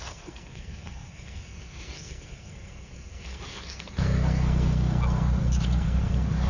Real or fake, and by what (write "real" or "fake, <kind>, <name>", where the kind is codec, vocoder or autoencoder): fake, codec, SNAC